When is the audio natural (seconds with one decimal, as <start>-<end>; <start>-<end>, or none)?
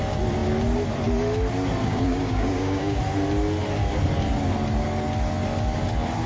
0.0-1.8; 3.0-6.3